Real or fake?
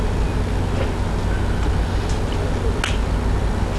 real